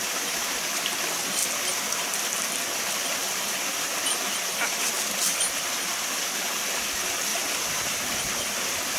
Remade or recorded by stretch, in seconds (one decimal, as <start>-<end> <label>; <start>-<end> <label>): 0.0-7.3 recorded; 7.3-8.2 remade; 8.2-9.0 recorded